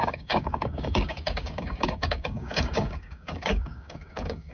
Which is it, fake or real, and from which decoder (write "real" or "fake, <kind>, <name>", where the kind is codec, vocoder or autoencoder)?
fake, codec, DAC